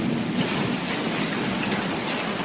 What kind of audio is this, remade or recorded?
recorded